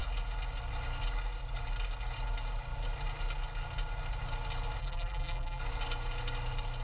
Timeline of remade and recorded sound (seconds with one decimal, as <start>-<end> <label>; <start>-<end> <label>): 0.0-4.8 recorded; 4.8-5.6 remade; 5.6-6.8 recorded